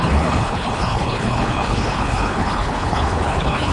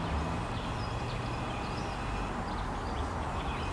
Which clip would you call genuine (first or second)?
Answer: second